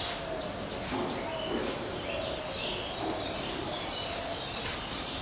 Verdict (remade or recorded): recorded